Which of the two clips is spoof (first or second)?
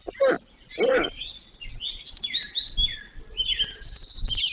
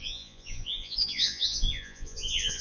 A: second